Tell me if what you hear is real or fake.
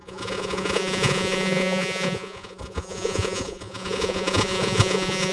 fake